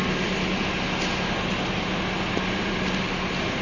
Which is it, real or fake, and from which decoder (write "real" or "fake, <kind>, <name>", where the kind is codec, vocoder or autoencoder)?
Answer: real